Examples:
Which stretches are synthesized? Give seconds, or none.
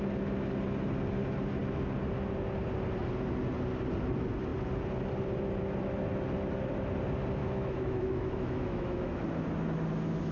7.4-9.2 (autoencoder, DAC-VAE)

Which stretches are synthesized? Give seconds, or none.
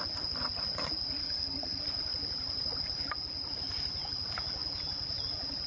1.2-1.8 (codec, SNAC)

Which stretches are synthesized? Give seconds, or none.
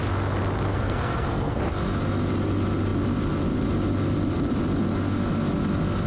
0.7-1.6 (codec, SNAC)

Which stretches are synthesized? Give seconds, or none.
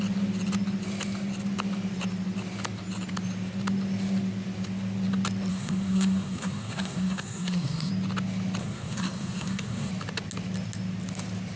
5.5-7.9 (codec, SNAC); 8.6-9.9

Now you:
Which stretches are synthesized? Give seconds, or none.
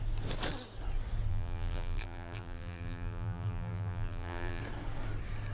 1.3-4.6 (vocoder, BigVGAN v2)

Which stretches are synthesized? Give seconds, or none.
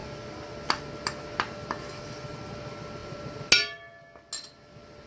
none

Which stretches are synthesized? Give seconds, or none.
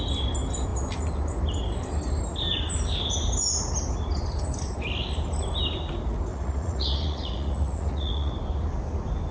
6.3-8.3 (vocoder, Vocos)